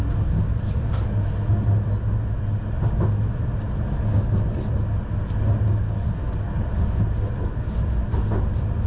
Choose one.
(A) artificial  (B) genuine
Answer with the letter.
B